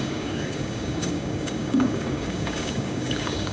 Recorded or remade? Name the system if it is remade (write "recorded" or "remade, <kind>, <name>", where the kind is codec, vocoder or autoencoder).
remade, codec, DAC